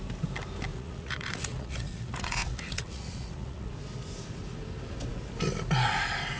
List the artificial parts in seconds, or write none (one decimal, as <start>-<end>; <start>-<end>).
0.7-3.7